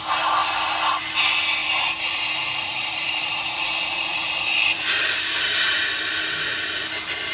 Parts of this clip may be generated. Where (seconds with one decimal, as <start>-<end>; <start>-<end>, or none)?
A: 1.6-5.9